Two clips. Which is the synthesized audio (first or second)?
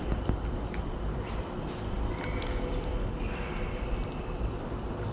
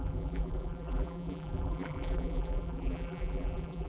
second